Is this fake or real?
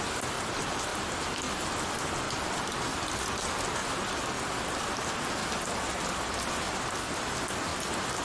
real